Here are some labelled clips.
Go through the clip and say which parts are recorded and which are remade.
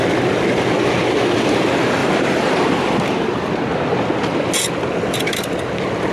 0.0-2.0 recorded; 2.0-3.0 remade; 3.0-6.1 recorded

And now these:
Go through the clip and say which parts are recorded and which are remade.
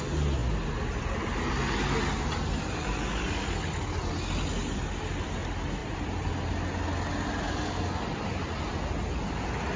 0.0-5.8 recorded; 5.8-6.3 remade; 6.3-9.8 recorded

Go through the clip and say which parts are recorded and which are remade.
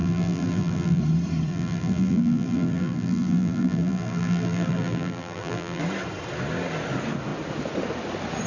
0.0-1.0 remade; 1.0-1.5 recorded; 1.5-5.8 remade; 5.8-8.5 recorded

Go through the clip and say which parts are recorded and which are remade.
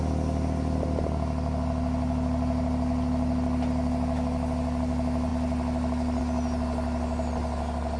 0.0-8.0 recorded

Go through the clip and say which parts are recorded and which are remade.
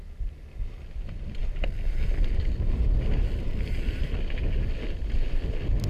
0.0-5.9 recorded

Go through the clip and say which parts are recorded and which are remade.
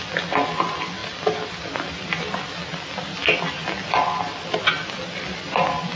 0.0-6.0 recorded